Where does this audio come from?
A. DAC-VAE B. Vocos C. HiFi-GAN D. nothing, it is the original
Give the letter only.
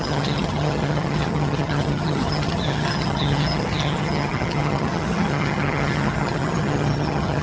C